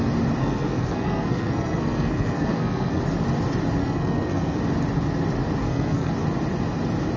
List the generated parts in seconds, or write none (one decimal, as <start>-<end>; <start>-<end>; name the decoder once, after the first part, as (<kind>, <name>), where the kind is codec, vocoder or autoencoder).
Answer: 0.4-3.0 (codec, SNAC); 3.8-4.6; 5.6-6.1